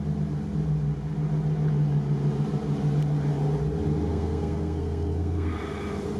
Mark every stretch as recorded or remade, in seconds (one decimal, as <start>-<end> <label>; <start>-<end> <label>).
0.0-4.1 recorded; 4.1-5.6 remade; 5.6-6.2 recorded